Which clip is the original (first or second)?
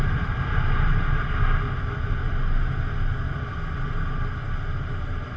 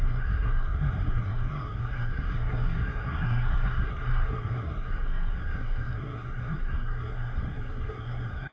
first